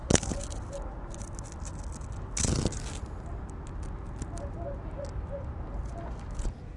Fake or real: real